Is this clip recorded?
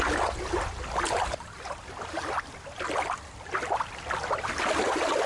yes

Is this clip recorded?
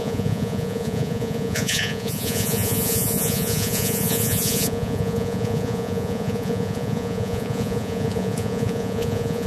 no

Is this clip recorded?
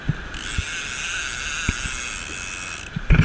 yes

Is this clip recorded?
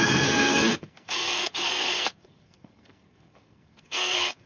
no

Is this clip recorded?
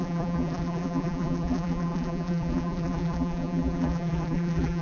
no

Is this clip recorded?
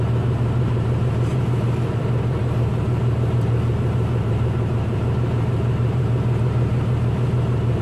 no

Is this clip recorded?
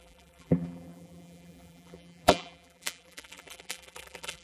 no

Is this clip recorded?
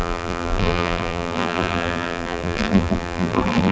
no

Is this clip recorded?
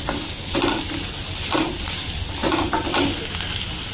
yes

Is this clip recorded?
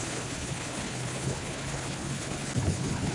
no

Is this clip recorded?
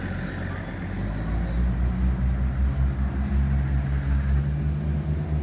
yes